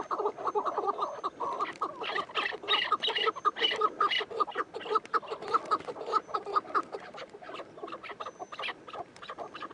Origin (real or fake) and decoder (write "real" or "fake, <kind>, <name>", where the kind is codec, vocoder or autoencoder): fake, vocoder, BigVGAN v2